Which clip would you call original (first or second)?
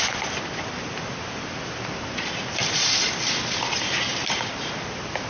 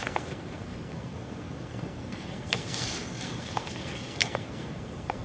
first